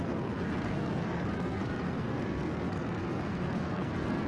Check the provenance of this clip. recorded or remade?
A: remade